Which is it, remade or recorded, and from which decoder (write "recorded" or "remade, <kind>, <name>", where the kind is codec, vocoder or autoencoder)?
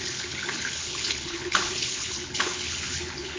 remade, codec, HILCodec